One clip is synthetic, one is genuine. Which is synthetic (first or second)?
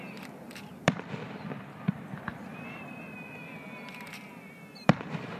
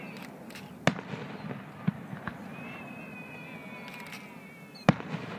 first